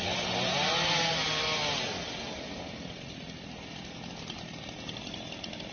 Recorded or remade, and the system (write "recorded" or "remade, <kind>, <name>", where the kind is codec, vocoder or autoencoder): recorded